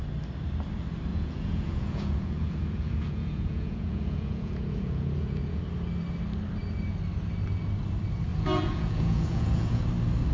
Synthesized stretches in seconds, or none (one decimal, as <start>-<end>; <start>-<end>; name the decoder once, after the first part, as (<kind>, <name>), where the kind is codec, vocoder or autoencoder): 1.1-5.6 (vocoder, Vocos); 8.3-9.8